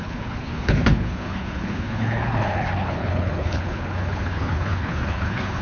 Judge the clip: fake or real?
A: fake